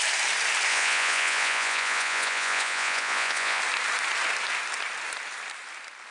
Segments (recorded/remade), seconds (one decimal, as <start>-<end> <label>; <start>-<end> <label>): 0.0-0.7 recorded; 0.7-3.6 remade; 3.6-6.1 recorded